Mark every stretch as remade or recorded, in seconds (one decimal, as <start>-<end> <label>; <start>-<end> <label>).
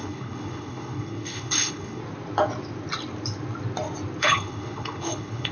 0.0-2.0 remade; 2.0-4.2 recorded; 4.2-5.5 remade